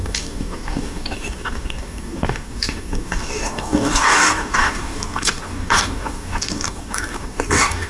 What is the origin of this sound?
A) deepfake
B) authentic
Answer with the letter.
A